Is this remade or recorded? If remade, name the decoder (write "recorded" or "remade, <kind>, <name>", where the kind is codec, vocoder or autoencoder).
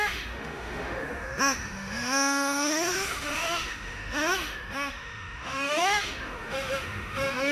remade, autoencoder, DAC-VAE